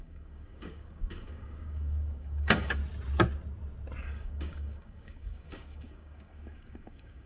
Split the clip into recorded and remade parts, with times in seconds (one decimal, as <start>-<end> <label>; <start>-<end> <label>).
0.0-2.8 remade; 2.8-4.0 recorded; 4.0-7.3 remade